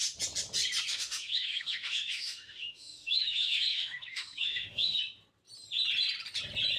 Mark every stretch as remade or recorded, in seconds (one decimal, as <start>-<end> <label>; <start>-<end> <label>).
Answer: 0.0-0.9 recorded; 0.9-5.0 remade; 5.0-6.8 recorded